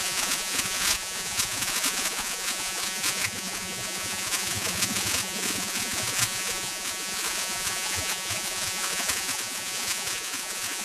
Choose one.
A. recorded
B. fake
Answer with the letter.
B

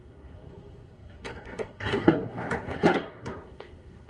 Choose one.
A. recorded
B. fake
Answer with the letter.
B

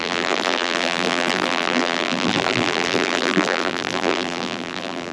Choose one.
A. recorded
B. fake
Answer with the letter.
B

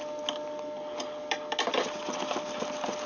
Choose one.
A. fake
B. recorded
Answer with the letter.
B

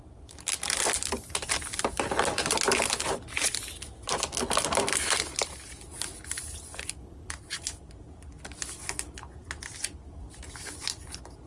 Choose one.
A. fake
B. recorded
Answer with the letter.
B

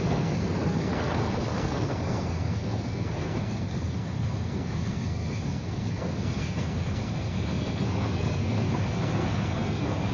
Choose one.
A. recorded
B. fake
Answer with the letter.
B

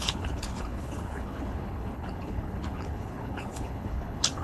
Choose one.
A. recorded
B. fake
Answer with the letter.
B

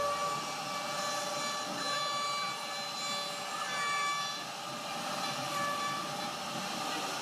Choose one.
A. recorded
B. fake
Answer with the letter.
A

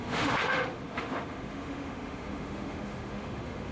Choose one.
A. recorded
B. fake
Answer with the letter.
B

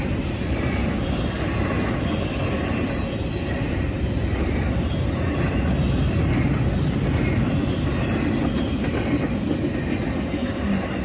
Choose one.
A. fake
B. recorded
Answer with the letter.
B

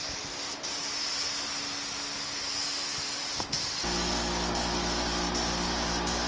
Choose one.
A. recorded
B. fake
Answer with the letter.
A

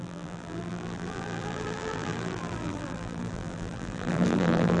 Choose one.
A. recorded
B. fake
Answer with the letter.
B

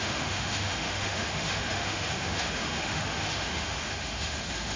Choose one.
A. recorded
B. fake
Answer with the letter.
B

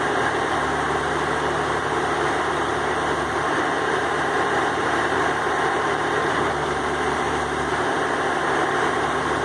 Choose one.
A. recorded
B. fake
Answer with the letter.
B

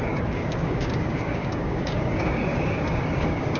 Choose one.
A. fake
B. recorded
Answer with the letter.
A